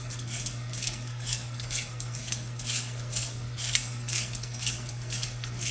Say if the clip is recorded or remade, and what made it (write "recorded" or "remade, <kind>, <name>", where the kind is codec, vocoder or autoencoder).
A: remade, codec, SNAC